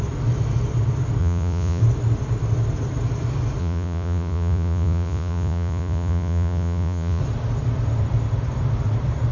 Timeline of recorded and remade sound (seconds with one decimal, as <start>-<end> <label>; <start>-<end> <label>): 0.0-1.2 recorded; 1.2-1.8 remade; 1.8-3.6 recorded; 3.6-7.2 remade; 7.2-9.3 recorded